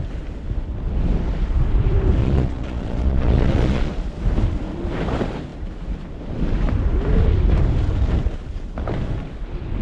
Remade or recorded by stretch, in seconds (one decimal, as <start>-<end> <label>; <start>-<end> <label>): 0.0-2.2 recorded; 2.2-3.9 remade; 3.9-9.8 recorded